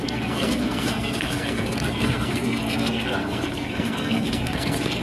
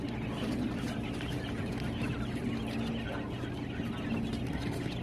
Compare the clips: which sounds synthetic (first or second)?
first